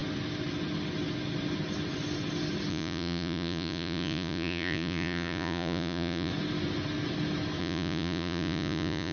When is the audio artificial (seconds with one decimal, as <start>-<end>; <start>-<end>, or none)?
2.7-6.3; 7.6-9.1